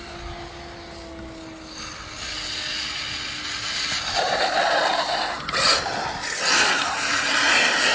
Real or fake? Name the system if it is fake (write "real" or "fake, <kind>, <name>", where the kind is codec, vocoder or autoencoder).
real